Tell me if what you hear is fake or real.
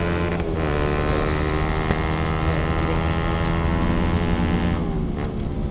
real